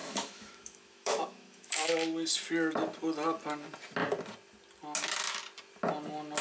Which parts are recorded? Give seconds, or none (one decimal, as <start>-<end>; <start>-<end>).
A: 1.9-6.4